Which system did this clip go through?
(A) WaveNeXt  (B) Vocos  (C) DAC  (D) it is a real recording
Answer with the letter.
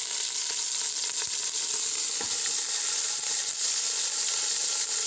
D